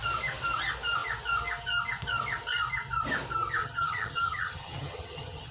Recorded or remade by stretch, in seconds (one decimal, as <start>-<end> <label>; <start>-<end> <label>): 0.0-3.6 recorded; 3.6-5.5 remade